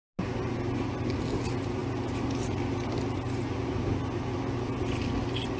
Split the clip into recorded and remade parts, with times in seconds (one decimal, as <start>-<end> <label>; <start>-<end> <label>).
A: 0.0-5.6 recorded